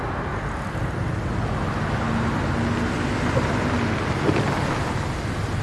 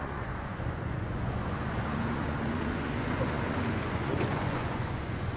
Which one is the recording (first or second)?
first